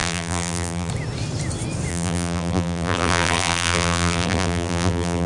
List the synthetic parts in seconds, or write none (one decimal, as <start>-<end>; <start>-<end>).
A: 0.0-0.9; 1.9-5.3